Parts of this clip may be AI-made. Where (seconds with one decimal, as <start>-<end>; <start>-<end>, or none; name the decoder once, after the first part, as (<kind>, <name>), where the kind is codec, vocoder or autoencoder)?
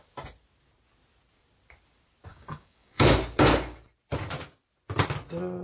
2.3-3.0 (codec, DAC)